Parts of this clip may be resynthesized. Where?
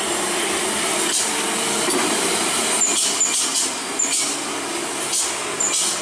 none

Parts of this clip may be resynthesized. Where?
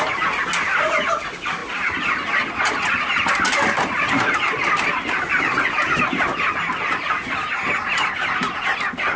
none